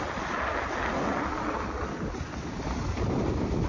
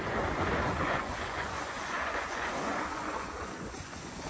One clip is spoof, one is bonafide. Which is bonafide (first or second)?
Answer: first